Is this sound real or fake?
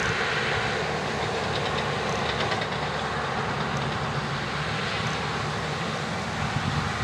real